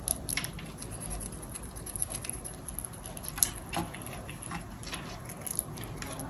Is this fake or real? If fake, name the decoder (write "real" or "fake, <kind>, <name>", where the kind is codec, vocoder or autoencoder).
real